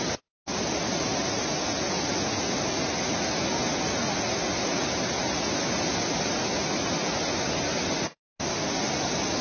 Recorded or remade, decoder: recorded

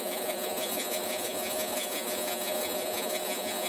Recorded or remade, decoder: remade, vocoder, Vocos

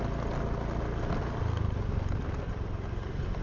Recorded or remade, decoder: recorded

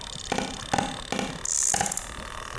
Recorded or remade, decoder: recorded